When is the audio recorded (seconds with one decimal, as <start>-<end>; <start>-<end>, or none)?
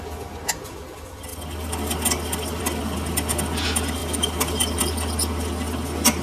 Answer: 0.0-1.3; 2.6-4.0; 4.8-6.2